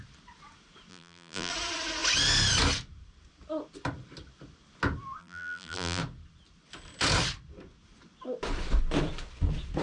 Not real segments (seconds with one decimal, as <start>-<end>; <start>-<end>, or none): 0.9-1.5; 5.2-6.0